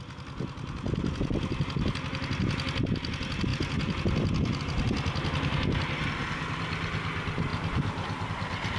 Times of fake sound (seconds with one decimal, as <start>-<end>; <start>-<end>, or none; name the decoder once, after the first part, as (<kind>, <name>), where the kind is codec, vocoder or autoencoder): 7.5-8.3 (vocoder, BigVGAN v2)